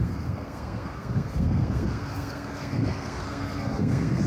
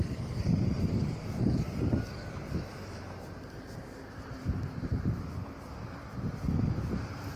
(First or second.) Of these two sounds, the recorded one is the second